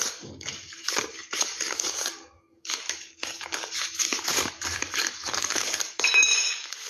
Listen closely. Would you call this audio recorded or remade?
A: remade